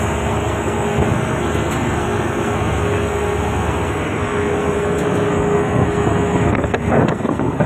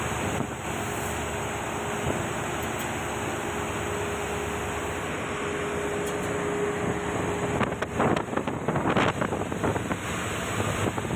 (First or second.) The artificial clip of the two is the first